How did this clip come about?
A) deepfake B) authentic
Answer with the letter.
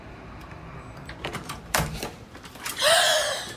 A